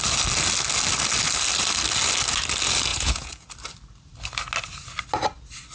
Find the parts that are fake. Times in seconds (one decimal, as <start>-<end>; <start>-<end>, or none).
2.9-3.5